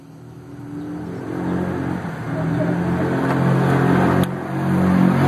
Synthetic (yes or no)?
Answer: no